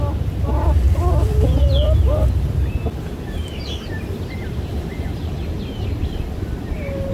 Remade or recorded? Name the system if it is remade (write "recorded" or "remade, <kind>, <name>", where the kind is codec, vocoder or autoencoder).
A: recorded